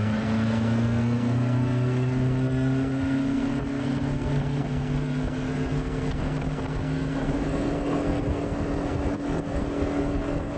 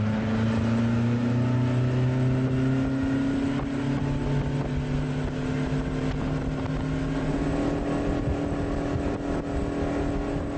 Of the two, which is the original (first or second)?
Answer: second